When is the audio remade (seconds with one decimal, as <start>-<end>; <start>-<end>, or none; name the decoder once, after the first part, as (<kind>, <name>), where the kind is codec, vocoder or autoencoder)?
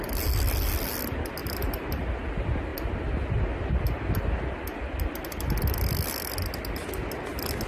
1.4-2.1 (vocoder, BigVGAN v2)